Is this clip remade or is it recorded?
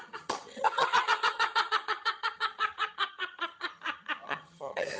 remade